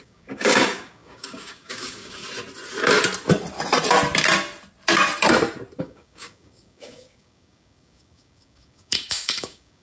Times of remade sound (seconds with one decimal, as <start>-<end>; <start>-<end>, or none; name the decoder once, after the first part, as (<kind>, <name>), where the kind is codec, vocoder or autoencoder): 0.0-2.2 (codec, DAC); 5.8-9.8